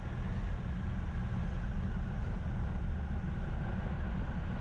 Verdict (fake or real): real